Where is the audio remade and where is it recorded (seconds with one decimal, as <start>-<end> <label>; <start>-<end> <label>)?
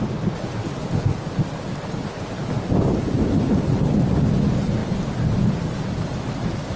0.0-6.8 recorded